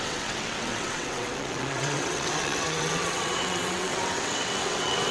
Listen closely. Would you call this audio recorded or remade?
remade